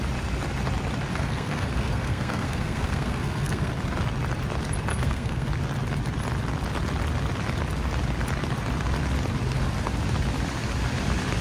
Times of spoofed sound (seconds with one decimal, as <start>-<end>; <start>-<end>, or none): 1.1-3.7; 4.9-5.5